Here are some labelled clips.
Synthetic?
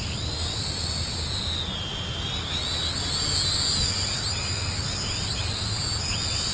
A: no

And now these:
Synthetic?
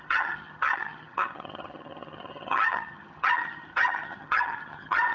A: yes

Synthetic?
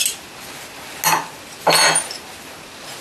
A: no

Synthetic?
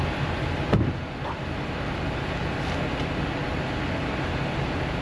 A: no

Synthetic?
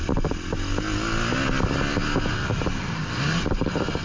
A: no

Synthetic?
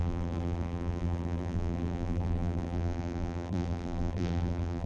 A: yes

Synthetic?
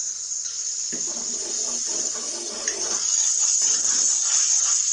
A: no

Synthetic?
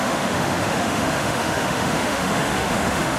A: yes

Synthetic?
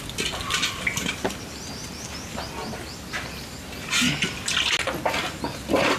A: no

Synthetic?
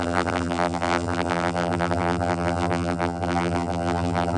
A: yes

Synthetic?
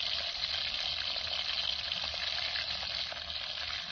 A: no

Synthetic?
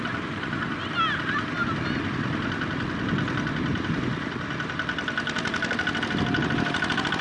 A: no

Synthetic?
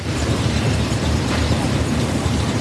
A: yes